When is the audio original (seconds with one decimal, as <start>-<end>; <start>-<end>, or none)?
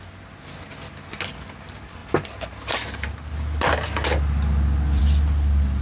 0.0-5.8